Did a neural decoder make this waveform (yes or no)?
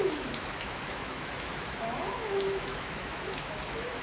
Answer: yes